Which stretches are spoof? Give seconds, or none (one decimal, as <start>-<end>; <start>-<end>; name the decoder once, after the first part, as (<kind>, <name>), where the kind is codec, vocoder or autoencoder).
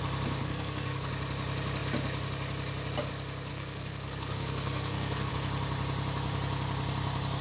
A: 0.4-1.1 (codec, SNAC); 3.5-5.3